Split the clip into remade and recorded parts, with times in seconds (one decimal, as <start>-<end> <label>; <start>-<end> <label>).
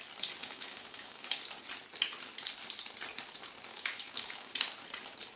0.0-0.4 recorded; 0.4-1.4 remade; 1.4-3.7 recorded; 3.7-4.5 remade; 4.5-5.4 recorded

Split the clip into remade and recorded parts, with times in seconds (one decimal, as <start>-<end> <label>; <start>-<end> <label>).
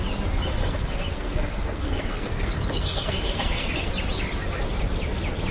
0.0-0.6 recorded; 0.6-3.9 remade; 3.9-5.5 recorded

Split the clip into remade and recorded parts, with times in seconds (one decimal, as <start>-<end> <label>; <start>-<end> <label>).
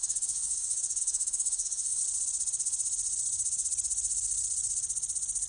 0.0-2.0 remade; 2.0-5.5 recorded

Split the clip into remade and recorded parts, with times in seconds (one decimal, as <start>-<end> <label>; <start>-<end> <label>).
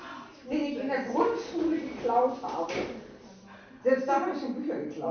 0.0-5.1 recorded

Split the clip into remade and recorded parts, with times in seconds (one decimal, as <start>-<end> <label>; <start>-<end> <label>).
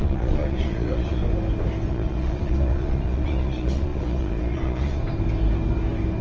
0.0-1.2 remade; 1.2-1.9 recorded; 1.9-5.0 remade; 5.0-6.2 recorded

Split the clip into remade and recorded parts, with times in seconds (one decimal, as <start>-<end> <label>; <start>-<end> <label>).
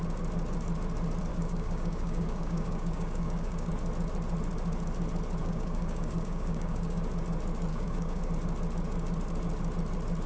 0.0-1.3 recorded; 1.3-3.7 remade; 3.7-5.4 recorded; 5.4-7.0 remade; 7.0-7.7 recorded; 7.7-8.3 remade; 8.3-10.3 recorded